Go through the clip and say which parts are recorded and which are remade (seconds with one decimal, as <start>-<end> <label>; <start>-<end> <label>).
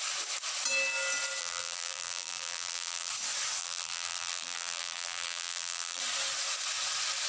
0.0-1.4 recorded; 1.4-3.1 remade; 3.1-3.6 recorded; 3.6-6.0 remade; 6.0-7.3 recorded